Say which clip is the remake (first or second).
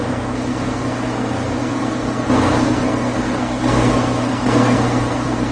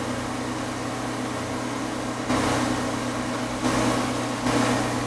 first